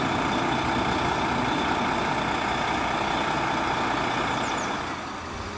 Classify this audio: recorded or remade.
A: recorded